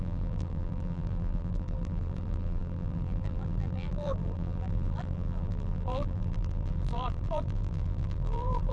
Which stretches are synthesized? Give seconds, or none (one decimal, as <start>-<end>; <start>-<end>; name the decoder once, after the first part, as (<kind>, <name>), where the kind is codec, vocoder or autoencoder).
0.0-8.7 (vocoder, BigVGAN v2)